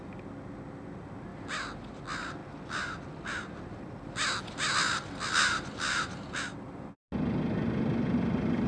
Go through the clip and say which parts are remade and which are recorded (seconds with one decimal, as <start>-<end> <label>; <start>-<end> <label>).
0.0-1.3 recorded; 1.3-2.0 remade; 2.0-8.7 recorded